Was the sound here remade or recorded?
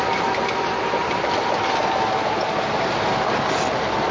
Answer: recorded